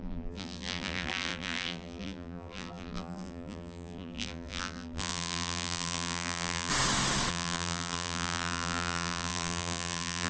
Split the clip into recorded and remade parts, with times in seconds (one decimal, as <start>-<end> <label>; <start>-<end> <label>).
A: 0.0-6.7 remade; 6.7-7.3 recorded; 7.3-10.3 remade